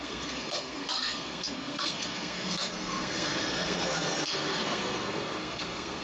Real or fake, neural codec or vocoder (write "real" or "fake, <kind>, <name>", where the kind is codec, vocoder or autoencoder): fake, codec, SNAC